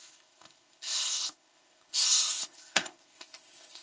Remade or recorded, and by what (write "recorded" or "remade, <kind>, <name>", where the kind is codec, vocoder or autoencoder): remade, codec, ZipCodec